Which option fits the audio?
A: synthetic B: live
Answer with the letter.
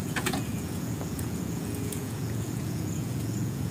A